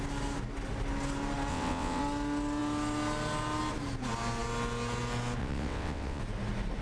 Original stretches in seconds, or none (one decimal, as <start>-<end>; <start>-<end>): 0.0-1.5; 2.0-5.4; 6.2-6.8